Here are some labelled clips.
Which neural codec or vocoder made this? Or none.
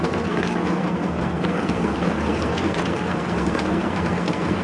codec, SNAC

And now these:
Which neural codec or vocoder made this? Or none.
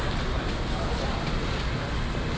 none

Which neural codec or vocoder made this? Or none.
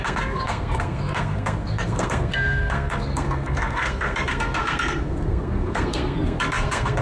codec, SNAC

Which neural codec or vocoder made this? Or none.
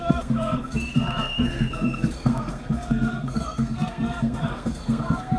codec, SNAC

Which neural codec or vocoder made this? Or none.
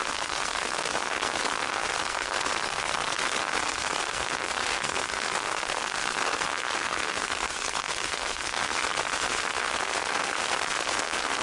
codec, SNAC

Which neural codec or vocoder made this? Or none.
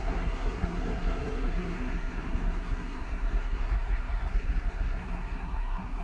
codec, SNAC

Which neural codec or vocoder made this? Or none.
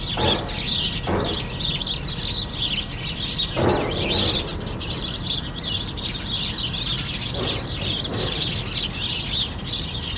none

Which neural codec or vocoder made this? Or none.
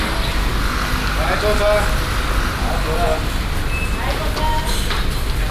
none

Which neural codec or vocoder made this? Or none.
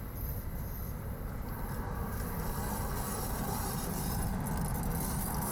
none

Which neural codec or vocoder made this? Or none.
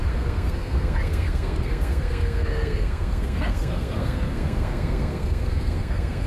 codec, SNAC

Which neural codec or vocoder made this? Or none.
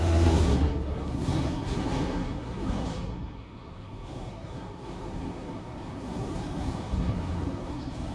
codec, SNAC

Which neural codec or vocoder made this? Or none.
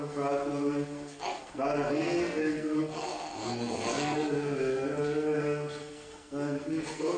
codec, SNAC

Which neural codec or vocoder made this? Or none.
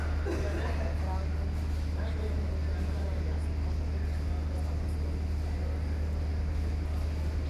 none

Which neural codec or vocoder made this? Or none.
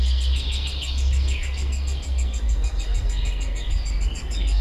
codec, SNAC